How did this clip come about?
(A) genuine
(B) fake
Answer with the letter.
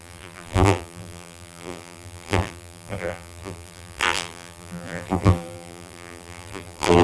B